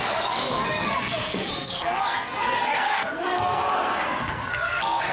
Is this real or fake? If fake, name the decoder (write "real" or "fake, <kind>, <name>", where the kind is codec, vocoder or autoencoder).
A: fake, codec, SNAC